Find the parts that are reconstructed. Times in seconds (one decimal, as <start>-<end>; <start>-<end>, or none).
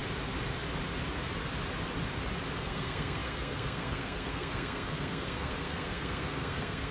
2.6-6.9